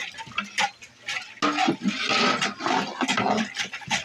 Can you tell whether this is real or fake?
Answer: real